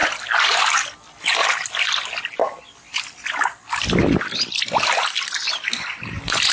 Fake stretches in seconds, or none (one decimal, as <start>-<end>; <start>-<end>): none